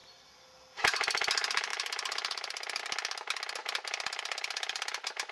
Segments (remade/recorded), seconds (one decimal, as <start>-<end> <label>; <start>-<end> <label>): 0.0-0.8 remade; 0.8-1.7 recorded; 1.7-2.8 remade; 2.8-3.6 recorded; 3.6-5.3 remade